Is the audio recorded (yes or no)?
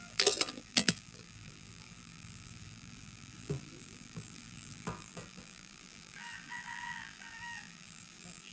no